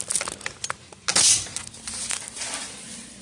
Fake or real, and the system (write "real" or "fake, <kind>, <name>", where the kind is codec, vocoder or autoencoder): real